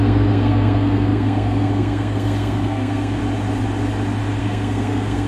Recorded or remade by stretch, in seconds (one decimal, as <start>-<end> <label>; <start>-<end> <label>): 0.0-3.2 remade; 3.2-4.4 recorded; 4.4-5.3 remade